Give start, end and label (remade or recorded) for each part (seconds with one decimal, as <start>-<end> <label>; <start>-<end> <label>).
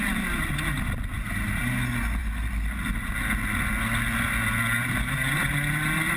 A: 0.0-6.2 recorded